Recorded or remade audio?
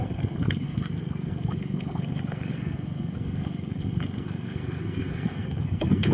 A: remade